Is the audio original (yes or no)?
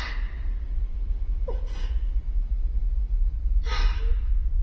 yes